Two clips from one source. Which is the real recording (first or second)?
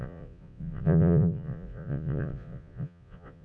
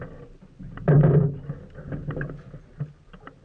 second